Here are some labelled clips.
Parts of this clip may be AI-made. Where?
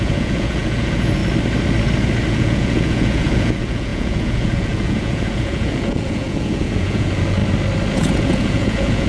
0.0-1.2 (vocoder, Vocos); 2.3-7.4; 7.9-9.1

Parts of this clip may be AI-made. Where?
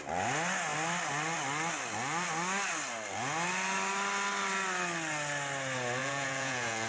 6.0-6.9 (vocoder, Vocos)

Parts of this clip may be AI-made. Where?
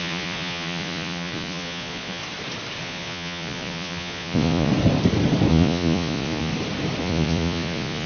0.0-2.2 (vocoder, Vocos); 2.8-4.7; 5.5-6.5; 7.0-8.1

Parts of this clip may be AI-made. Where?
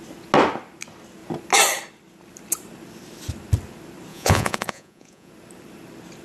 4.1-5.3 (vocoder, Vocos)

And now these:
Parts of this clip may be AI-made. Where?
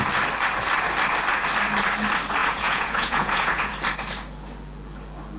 2.4-3.7 (vocoder, Vocos)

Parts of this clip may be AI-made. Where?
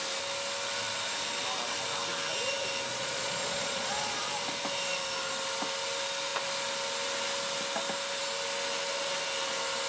2.9-4.3 (vocoder, Vocos)